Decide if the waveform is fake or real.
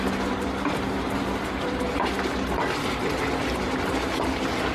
real